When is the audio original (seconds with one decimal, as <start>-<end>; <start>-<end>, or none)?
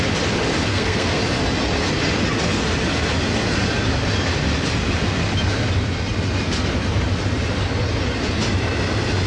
0.0-0.7; 1.2-9.3